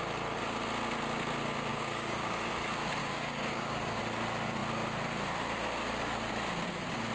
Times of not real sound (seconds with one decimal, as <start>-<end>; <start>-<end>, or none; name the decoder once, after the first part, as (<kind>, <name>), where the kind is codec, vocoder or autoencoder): 1.7-2.5 (codec, DAC); 3.0-4.0